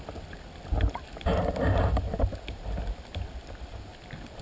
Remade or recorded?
recorded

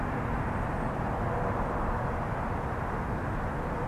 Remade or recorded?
recorded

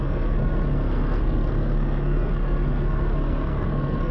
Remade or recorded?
remade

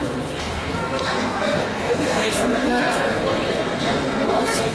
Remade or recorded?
remade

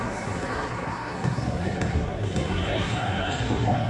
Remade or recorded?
remade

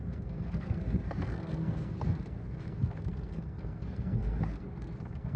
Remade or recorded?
remade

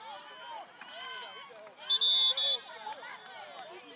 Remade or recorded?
recorded